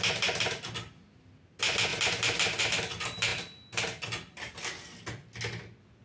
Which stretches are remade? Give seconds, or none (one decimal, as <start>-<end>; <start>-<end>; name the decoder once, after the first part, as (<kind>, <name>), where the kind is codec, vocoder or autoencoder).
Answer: none